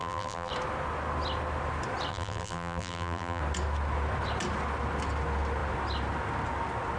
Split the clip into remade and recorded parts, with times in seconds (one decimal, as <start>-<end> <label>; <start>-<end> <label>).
0.0-0.5 remade; 0.5-2.1 recorded; 2.1-3.4 remade; 3.4-7.0 recorded